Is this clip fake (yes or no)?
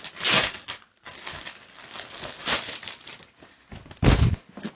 no